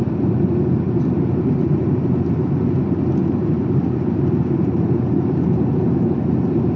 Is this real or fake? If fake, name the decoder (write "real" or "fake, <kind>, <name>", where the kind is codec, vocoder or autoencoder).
fake, vocoder, BigVGAN v2